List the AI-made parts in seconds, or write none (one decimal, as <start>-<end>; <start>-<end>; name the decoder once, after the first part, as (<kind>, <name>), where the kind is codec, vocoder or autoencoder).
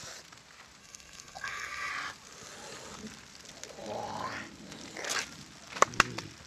0.8-1.9 (codec, SNAC)